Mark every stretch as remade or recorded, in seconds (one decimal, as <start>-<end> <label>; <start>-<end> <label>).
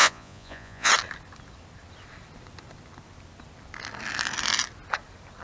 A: 0.0-0.9 remade; 0.9-5.4 recorded